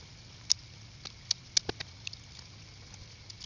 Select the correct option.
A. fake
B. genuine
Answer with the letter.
B